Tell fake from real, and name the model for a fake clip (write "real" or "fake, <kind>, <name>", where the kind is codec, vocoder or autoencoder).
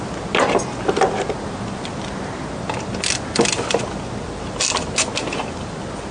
real